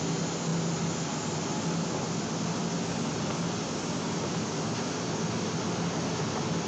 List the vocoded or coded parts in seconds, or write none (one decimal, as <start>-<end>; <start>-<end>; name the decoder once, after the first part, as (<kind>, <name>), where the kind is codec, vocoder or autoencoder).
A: none